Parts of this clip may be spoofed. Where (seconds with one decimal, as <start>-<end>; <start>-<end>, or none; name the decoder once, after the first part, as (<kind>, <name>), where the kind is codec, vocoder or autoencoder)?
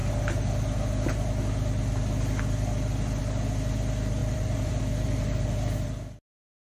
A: 4.2-4.8 (vocoder, BigVGAN v2)